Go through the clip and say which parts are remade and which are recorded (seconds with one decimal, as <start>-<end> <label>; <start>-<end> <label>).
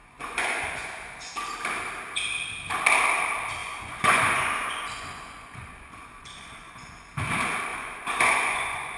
0.0-1.3 remade; 1.3-3.6 recorded; 3.6-7.1 remade; 7.1-7.7 recorded; 7.7-9.0 remade